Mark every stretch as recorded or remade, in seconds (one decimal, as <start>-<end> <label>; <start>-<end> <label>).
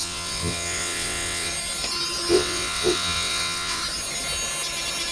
0.0-1.5 remade; 1.5-2.3 recorded; 2.3-3.8 remade; 3.8-5.1 recorded